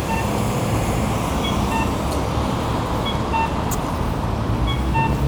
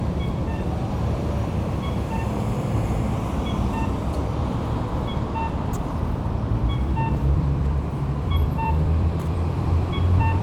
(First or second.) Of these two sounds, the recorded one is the first